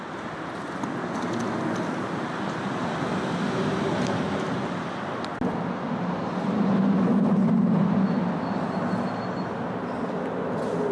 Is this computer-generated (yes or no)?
no